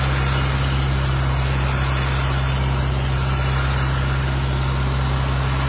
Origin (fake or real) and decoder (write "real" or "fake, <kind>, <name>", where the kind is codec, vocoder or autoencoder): real